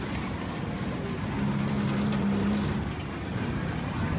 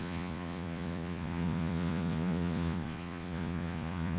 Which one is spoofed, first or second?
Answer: second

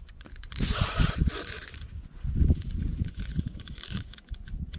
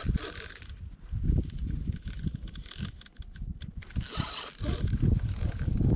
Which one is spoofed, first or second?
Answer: first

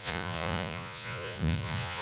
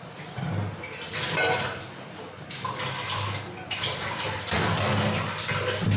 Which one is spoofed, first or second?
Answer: first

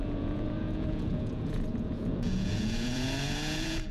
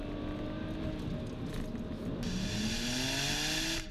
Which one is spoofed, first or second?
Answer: first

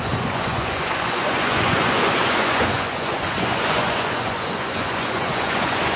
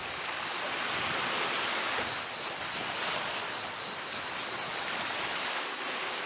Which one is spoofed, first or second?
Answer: first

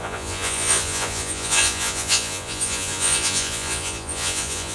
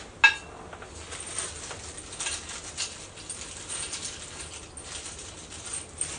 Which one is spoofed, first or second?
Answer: first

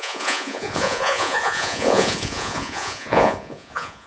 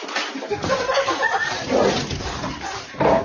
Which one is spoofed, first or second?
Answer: first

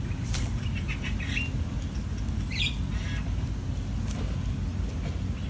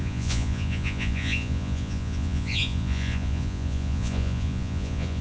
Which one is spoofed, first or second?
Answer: second